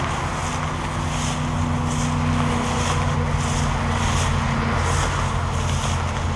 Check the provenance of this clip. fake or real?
real